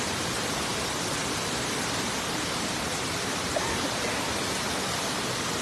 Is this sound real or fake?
real